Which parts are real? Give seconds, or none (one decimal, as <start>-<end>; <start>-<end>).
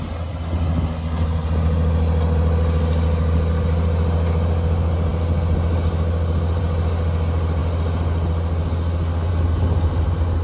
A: 0.0-10.4